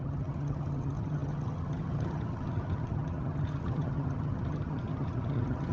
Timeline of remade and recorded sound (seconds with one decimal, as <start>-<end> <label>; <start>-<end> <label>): 0.0-5.7 remade